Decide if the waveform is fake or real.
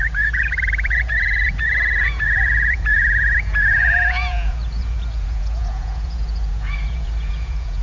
fake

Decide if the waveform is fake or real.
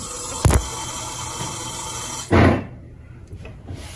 real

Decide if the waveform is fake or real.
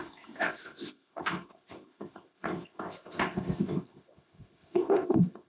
fake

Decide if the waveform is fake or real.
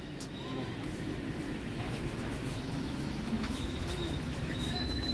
fake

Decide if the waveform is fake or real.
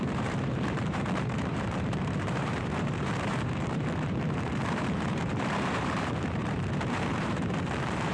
fake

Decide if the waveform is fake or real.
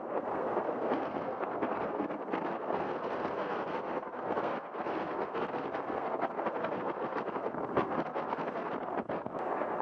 fake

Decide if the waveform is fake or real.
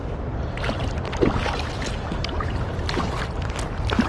real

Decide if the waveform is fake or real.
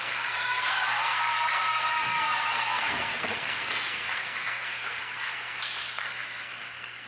fake